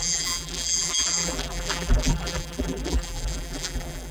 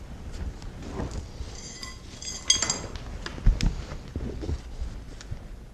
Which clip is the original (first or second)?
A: second